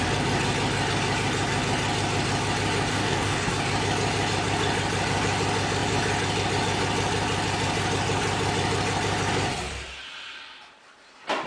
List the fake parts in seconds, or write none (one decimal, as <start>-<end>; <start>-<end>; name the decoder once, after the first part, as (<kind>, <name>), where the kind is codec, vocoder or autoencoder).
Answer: 2.9-3.5 (codec, DAC)